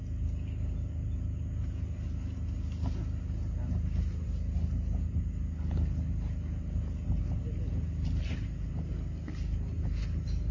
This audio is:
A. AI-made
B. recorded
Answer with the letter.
B